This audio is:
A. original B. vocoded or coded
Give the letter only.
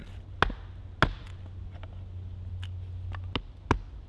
A